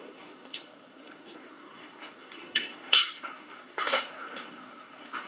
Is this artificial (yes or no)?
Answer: yes